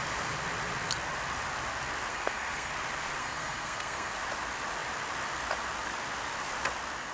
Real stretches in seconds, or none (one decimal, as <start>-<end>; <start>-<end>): 0.0-2.1; 2.7-3.2; 4.1-7.1